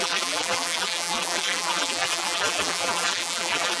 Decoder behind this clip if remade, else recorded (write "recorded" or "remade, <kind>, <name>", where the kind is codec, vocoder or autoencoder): remade, vocoder, BigVGAN v2